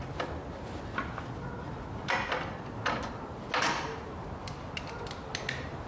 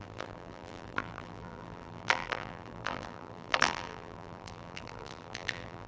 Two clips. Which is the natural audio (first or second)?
first